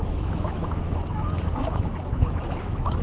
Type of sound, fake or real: fake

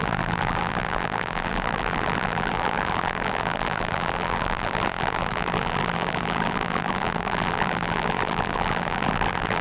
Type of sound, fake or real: fake